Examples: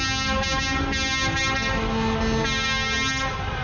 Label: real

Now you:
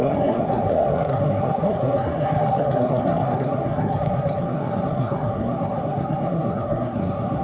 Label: fake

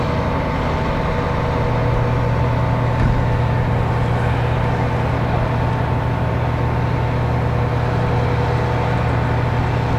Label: real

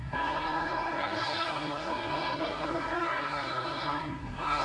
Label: fake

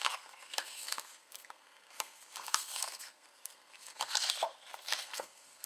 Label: fake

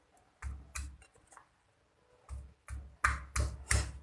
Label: real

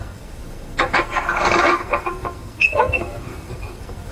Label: fake